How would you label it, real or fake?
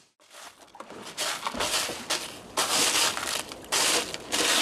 real